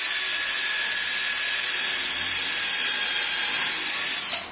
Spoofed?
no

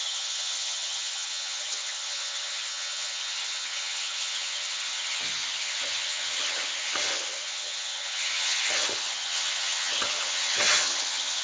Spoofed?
yes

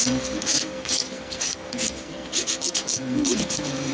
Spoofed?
yes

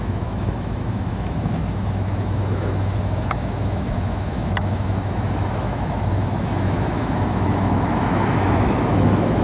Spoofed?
yes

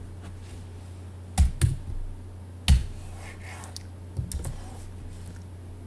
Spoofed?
no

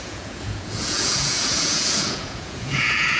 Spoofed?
yes